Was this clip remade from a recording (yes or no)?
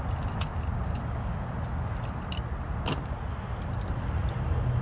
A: no